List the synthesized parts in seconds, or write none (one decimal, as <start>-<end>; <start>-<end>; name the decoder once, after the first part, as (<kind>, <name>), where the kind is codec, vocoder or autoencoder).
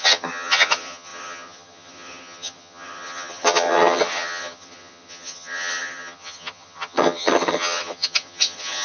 0.0-8.8 (vocoder, HiFi-GAN)